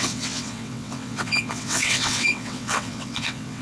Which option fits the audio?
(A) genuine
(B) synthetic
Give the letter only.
B